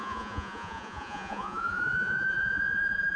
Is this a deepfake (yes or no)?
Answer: yes